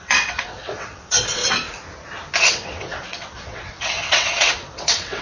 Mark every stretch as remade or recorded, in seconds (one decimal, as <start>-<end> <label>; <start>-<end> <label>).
0.0-1.4 remade; 1.4-2.4 recorded; 2.4-5.2 remade